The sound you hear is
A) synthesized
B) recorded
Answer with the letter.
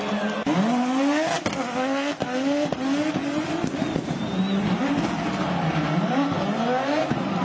B